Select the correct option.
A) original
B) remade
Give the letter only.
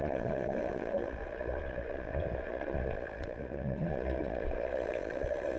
B